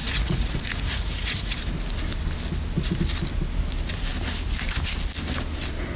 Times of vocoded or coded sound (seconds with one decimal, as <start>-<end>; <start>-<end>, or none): 0.0-1.6